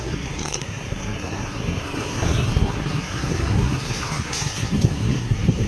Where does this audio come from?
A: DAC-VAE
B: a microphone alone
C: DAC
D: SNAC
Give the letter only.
D